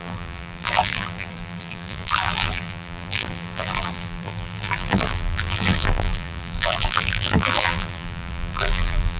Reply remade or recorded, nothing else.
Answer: remade